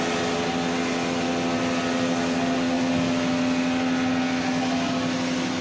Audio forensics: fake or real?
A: real